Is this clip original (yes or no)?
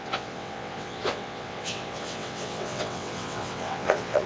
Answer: no